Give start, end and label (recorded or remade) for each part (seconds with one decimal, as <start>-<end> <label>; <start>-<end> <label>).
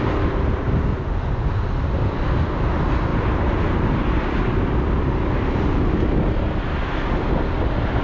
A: 0.0-0.9 recorded; 0.9-1.5 remade; 1.5-8.0 recorded